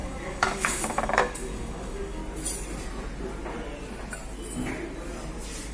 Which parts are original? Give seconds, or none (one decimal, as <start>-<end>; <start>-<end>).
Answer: 2.2-5.7